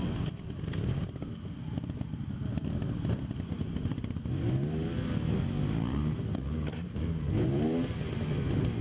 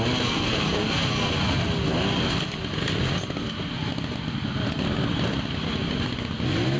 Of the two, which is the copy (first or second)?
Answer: first